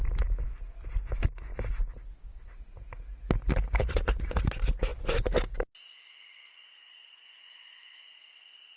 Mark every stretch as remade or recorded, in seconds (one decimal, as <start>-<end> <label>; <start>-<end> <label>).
0.0-3.8 recorded; 3.8-4.4 remade; 4.4-8.8 recorded